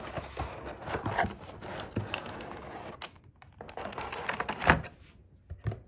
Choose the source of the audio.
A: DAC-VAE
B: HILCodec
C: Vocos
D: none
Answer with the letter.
D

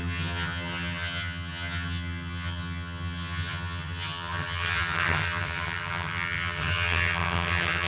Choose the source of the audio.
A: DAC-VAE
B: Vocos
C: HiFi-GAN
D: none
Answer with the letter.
C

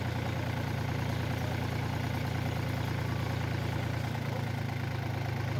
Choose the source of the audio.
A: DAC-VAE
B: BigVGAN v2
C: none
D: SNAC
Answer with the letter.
C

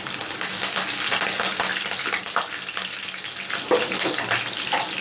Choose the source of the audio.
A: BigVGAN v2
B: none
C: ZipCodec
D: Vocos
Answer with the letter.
B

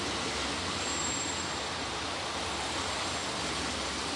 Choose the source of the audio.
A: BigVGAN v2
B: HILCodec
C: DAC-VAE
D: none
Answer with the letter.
D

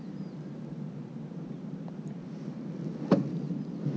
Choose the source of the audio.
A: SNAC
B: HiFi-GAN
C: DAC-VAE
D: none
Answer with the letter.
D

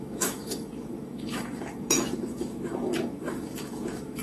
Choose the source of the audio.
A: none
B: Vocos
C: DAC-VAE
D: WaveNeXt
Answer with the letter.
C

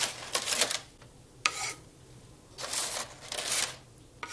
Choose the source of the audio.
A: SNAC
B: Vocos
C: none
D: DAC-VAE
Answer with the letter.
C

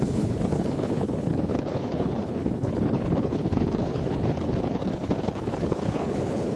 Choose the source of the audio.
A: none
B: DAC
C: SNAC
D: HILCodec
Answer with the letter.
D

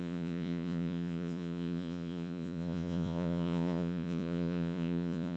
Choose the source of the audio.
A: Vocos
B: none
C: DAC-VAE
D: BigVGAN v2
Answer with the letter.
A